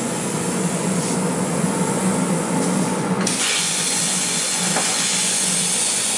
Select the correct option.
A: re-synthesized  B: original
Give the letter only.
A